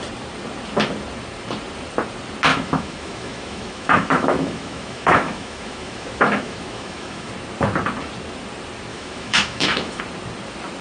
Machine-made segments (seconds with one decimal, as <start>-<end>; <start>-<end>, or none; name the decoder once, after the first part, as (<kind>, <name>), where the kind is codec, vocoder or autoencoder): 2.5-7.3 (autoencoder, DAC-VAE); 8.9-10.0